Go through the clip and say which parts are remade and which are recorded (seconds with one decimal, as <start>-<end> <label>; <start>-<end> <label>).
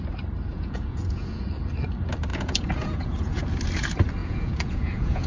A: 0.0-0.5 recorded; 0.5-1.5 remade; 1.5-2.3 recorded; 2.3-3.4 remade; 3.4-4.2 recorded; 4.2-5.3 remade